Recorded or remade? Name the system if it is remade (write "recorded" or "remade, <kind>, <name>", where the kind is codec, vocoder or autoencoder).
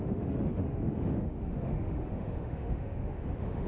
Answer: remade, autoencoder, DAC-VAE